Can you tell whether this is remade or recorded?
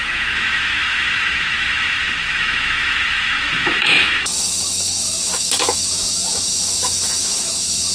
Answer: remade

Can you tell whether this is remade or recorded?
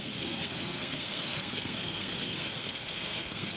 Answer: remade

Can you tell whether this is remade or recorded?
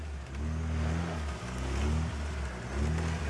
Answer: recorded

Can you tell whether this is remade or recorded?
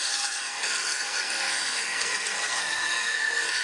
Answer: remade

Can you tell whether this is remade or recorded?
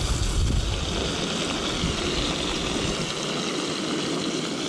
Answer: recorded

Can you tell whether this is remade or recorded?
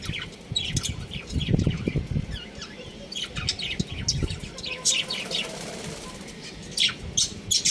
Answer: recorded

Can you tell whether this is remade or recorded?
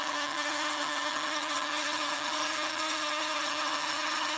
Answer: remade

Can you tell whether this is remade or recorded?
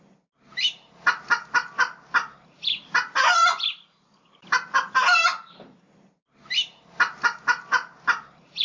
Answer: recorded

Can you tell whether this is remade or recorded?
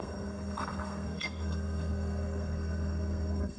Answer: remade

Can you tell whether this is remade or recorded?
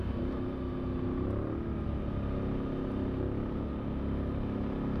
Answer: recorded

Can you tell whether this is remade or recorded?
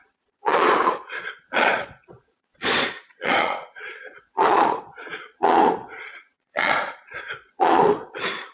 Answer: remade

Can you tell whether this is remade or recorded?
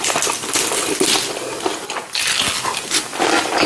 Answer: recorded